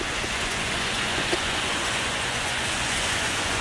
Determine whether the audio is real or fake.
fake